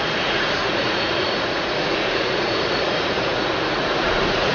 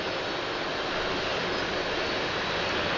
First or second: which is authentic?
second